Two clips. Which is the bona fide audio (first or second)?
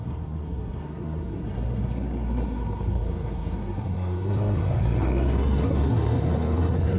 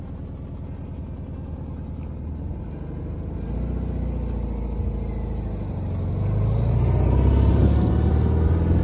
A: second